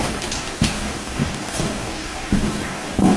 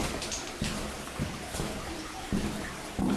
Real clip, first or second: second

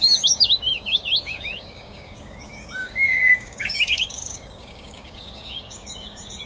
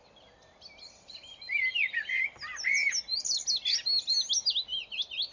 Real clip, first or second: second